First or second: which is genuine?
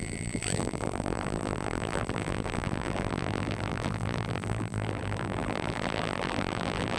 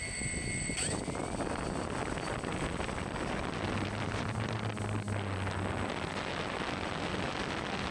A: second